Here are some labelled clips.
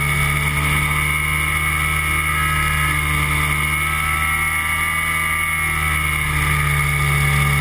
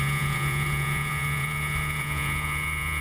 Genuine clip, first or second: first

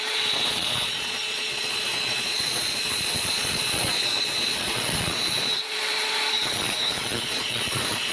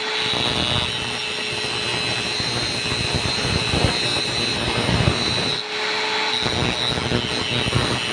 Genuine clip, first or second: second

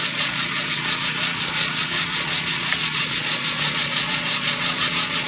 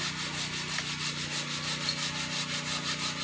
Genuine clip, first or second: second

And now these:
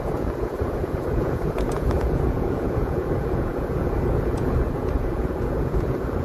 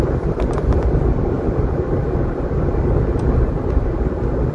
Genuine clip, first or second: second